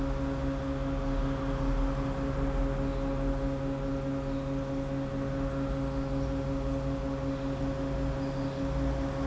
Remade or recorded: recorded